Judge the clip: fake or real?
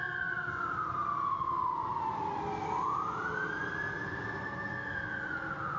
real